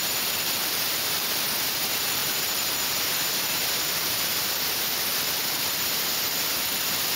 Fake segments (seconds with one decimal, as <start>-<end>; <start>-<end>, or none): 0.0-7.2